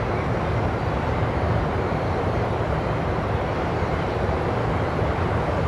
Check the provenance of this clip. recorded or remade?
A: remade